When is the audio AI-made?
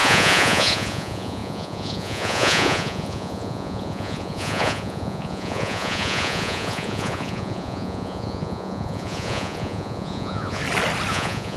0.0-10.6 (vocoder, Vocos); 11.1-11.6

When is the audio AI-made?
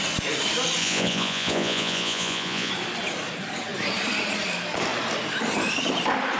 0.8-2.7 (vocoder, Vocos)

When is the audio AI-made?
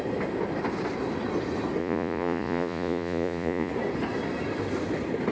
1.8-3.7 (vocoder, Vocos)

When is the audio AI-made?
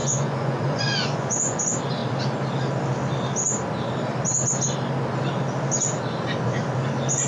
0.0-1.6 (vocoder, Vocos)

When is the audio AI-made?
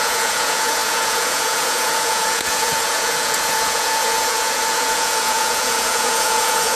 0.0-6.8 (vocoder, Vocos)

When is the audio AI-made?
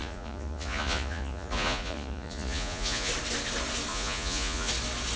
0.0-3.1 (vocoder, Vocos); 3.9-4.7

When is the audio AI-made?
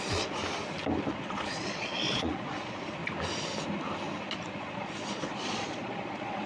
0.0-0.4 (vocoder, Vocos); 1.1-3.0; 4.3-6.5